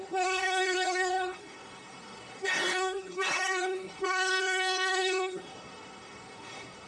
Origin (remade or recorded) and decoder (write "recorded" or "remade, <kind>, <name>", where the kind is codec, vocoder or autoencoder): remade, codec, SNAC